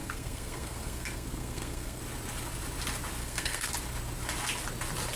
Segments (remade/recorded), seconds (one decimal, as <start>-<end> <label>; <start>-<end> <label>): 0.0-2.0 remade; 2.0-3.2 recorded; 3.2-3.7 remade; 3.7-5.2 recorded